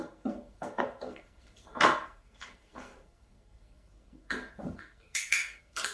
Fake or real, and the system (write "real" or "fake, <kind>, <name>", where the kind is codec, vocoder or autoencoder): fake, codec, SNAC